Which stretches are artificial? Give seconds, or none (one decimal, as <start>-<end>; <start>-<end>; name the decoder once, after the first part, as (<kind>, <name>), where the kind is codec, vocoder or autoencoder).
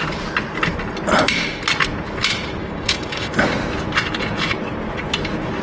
2.6-3.3 (codec, DAC)